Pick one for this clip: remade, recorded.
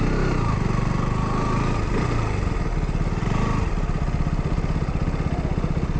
recorded